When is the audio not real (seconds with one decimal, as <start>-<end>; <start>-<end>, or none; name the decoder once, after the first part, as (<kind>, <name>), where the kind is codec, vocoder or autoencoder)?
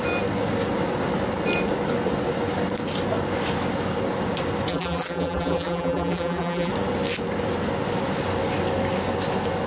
4.7-6.7 (vocoder, BigVGAN v2)